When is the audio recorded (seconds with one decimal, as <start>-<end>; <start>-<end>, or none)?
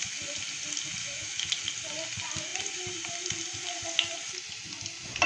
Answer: 0.0-1.0; 1.5-5.3